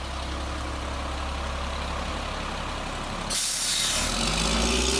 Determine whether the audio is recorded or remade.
recorded